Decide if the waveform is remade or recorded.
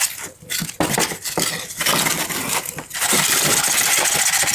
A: recorded